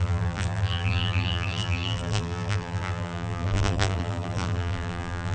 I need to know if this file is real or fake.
fake